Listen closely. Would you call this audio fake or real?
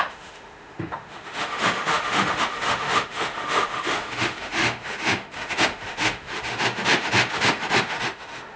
fake